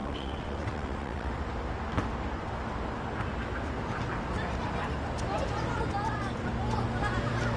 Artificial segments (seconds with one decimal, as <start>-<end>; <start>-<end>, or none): 0.0-1.3